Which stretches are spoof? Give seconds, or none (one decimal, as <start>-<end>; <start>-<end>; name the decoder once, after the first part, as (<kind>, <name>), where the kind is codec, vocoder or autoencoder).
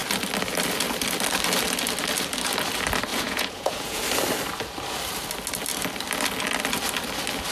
3.1-4.0 (vocoder, Vocos)